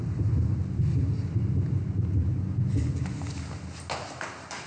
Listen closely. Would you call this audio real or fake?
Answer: real